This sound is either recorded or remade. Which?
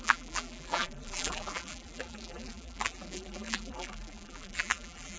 remade